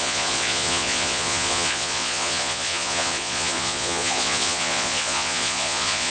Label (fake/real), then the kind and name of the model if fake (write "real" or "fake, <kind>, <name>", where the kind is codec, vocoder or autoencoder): fake, vocoder, Vocos